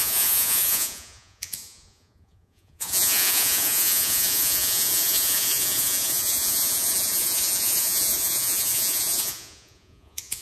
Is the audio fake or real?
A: fake